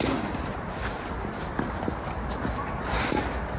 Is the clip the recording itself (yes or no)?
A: yes